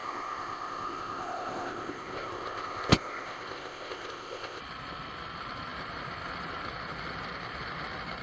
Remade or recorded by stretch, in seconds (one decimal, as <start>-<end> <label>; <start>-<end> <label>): 0.0-4.6 remade; 4.6-8.2 recorded